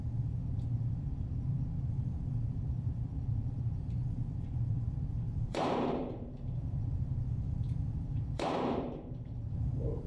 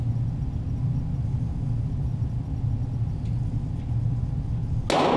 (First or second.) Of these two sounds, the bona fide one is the second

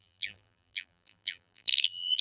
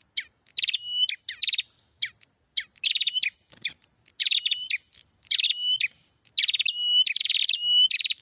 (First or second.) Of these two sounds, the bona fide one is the second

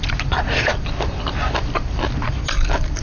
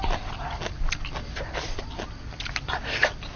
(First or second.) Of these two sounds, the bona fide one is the second